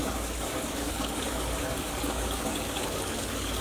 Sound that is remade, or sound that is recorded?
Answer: remade